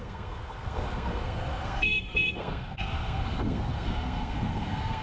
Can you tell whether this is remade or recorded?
remade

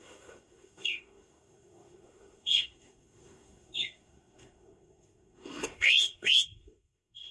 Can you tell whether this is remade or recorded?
remade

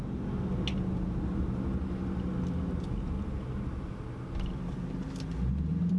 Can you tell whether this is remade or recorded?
recorded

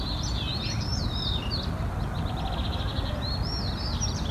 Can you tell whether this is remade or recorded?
recorded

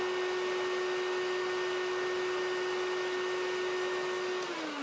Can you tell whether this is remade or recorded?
recorded